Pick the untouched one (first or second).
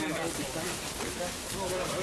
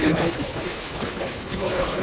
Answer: first